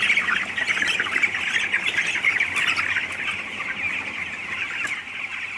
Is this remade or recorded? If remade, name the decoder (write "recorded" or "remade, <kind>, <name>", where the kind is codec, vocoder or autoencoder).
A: recorded